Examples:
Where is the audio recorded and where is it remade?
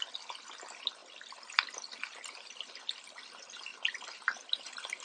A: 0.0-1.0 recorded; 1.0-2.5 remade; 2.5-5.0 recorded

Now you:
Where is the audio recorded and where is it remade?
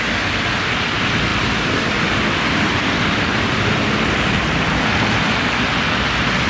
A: 0.0-1.3 recorded; 1.3-5.2 remade; 5.2-6.5 recorded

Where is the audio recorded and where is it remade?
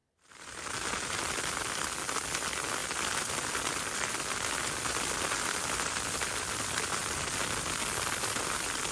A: 0.0-1.2 remade; 1.2-8.9 recorded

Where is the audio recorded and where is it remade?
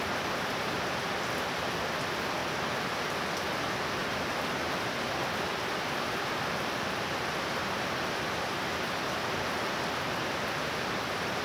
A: 0.0-2.4 remade; 2.4-3.6 recorded; 3.6-4.0 remade; 4.0-5.5 recorded; 5.5-11.4 remade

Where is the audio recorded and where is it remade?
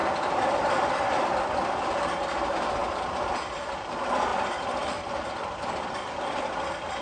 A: 0.0-1.4 remade; 1.4-4.3 recorded; 4.3-5.2 remade; 5.2-7.0 recorded